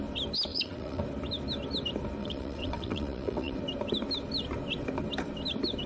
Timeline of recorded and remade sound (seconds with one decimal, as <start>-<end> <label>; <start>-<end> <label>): 0.0-0.5 recorded; 0.5-1.0 remade; 1.0-2.2 recorded; 2.2-3.6 remade; 3.6-5.9 recorded